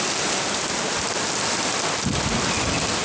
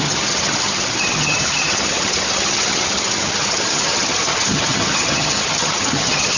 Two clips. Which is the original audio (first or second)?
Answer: first